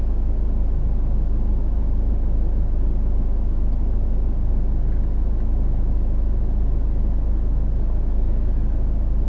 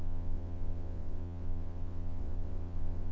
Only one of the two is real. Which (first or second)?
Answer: first